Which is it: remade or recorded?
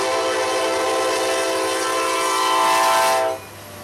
recorded